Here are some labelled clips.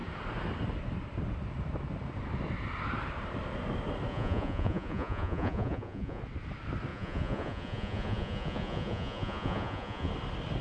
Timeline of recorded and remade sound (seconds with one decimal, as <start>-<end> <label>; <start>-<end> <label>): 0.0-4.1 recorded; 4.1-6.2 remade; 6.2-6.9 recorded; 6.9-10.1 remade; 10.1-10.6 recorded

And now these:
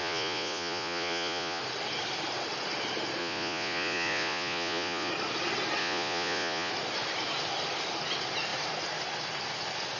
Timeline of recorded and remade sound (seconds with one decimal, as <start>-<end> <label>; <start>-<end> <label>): 0.0-1.6 remade; 1.6-3.2 recorded; 3.2-5.1 remade; 5.1-5.8 recorded; 5.8-6.7 remade; 6.7-10.0 recorded

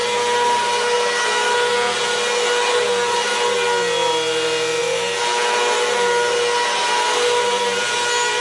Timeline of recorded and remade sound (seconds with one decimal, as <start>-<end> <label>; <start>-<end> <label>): 0.0-8.4 recorded